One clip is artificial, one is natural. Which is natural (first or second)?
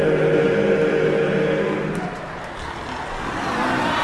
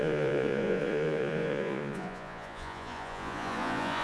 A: first